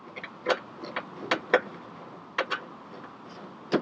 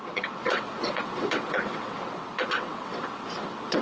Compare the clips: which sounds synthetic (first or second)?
second